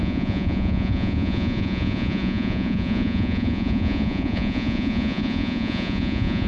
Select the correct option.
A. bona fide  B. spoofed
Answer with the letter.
B